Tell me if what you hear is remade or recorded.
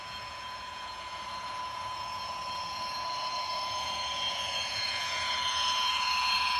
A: remade